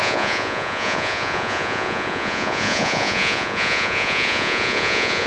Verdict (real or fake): fake